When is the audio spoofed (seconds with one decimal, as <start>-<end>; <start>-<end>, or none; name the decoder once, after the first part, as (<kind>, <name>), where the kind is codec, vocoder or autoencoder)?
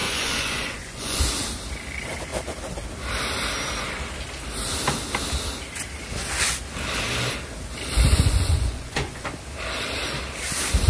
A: 0.0-1.2 (vocoder, Vocos); 8.1-9.3